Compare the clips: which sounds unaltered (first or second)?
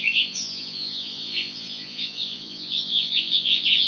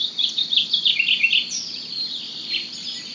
second